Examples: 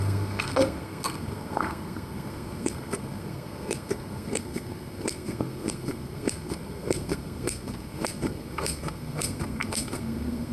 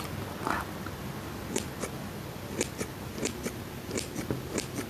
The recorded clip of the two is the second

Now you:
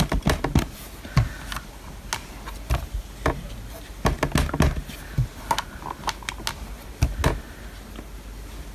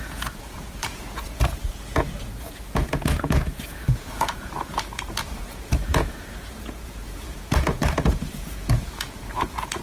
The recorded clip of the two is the first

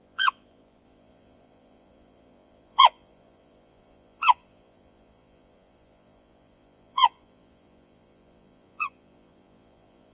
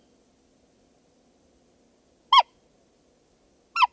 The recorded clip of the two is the second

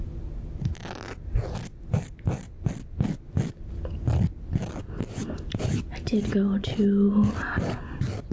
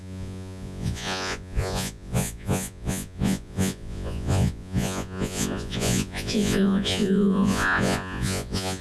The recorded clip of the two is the first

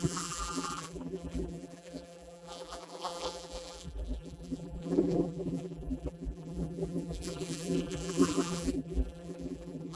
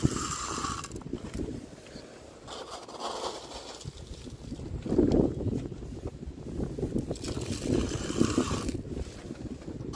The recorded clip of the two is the second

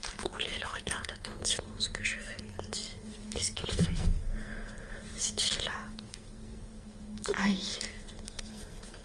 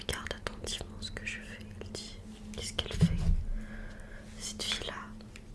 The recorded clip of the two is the second